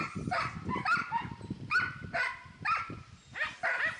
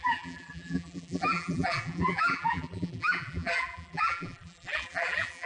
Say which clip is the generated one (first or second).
second